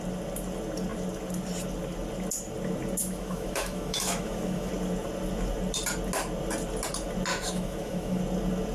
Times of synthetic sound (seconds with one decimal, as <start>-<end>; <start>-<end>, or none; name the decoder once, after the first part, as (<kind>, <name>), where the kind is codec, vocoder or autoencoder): 3.0-4.7 (autoencoder, DAC-VAE); 7.3-8.2